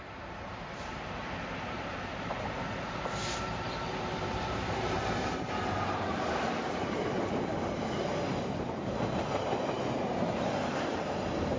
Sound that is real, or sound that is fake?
fake